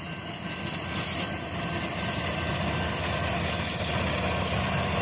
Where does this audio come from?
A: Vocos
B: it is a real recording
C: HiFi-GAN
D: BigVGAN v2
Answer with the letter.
B